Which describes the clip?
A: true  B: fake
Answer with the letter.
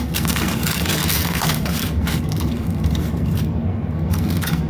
B